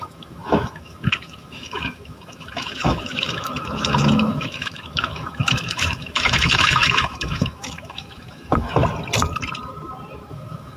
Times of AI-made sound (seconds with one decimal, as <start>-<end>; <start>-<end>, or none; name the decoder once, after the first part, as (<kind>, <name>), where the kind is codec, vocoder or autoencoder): 0.0-8.8 (autoencoder, DAC-VAE); 10.3-10.8